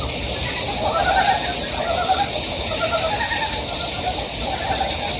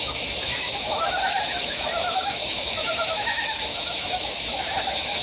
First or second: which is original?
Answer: first